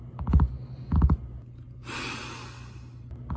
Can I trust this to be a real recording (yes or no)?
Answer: yes